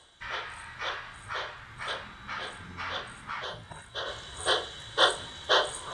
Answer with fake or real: real